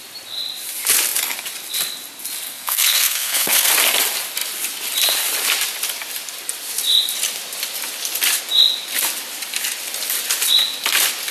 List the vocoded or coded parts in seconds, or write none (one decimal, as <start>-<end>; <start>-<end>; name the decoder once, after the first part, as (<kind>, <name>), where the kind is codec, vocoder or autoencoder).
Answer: 2.5-3.7 (codec, SNAC)

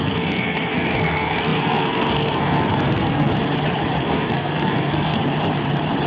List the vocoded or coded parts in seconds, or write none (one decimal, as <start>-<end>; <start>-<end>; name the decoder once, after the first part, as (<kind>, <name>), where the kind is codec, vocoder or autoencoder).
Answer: 0.0-3.3 (codec, SNAC); 4.0-5.2

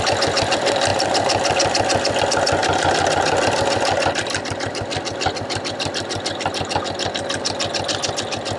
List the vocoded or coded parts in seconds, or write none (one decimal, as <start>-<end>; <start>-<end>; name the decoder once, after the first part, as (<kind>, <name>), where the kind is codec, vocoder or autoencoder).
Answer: none

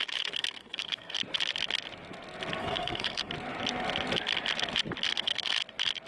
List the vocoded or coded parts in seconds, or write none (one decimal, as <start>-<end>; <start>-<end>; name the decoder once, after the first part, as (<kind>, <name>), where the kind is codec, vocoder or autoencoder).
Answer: 0.4-1.2 (codec, SNAC); 2.6-3.3; 5.1-5.6